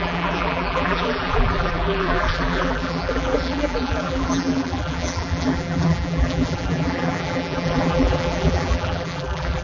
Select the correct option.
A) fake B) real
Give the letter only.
A